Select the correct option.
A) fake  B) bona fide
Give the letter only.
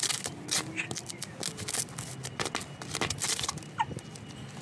B